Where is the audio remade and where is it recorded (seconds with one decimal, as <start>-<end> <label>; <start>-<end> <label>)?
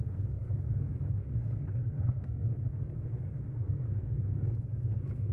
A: 0.0-5.3 remade